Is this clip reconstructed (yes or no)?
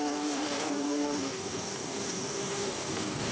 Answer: yes